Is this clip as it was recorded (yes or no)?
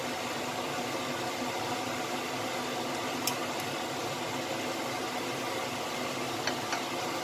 yes